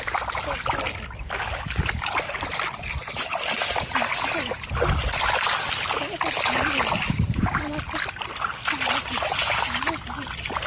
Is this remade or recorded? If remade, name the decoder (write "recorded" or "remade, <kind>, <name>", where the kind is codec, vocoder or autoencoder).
recorded